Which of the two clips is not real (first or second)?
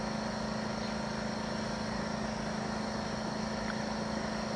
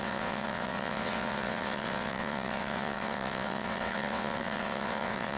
second